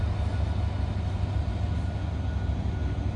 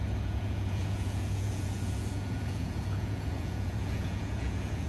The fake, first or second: second